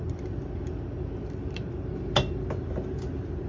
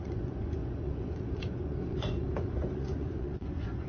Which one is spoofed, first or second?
second